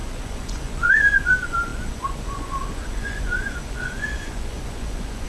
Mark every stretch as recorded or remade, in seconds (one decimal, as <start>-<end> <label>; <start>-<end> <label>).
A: 0.0-5.3 remade